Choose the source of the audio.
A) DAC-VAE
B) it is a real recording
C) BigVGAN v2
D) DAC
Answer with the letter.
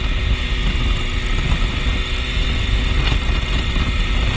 B